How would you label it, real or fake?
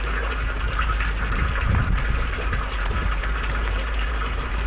fake